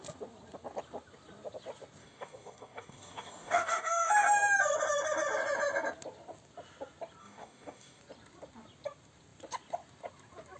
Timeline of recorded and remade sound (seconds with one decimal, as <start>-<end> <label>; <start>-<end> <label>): 0.0-2.0 recorded; 2.0-4.1 remade; 4.1-7.2 recorded; 7.2-8.0 remade; 8.0-10.6 recorded